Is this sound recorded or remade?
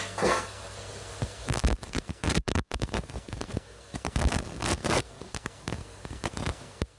remade